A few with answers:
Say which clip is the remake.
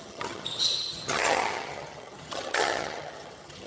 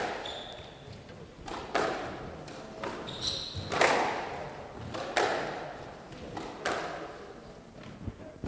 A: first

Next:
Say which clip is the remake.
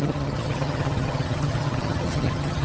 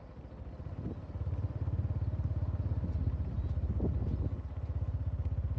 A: first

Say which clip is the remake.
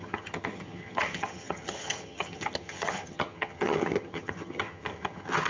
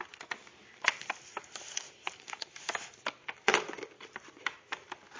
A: first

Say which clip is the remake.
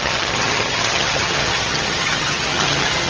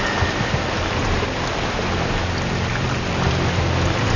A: first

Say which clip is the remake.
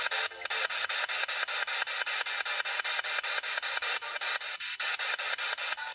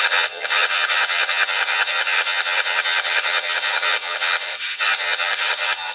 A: second